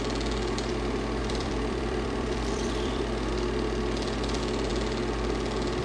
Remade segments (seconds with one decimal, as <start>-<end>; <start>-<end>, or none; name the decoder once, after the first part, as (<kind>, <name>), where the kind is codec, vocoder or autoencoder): 1.2-3.3 (vocoder, BigVGAN v2)